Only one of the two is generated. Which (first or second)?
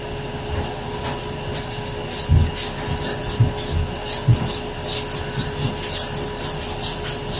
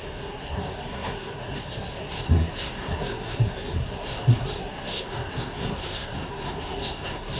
second